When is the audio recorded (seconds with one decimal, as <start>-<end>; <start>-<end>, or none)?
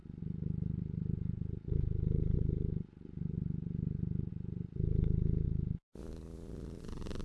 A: 0.0-7.2